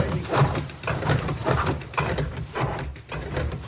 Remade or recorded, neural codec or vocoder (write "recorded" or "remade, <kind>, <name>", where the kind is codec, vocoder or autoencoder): remade, vocoder, BigVGAN v2